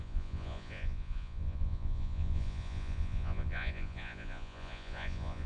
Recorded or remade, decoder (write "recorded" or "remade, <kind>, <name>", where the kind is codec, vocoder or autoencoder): remade, vocoder, Vocos